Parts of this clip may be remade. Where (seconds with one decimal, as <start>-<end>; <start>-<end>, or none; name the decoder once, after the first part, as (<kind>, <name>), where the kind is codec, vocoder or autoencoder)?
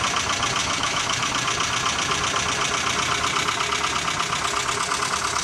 0.6-1.3 (autoencoder, DAC-VAE)